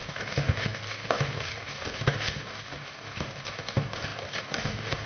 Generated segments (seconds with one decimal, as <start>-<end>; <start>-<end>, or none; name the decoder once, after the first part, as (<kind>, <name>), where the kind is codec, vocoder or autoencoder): 0.0-5.1 (codec, DAC)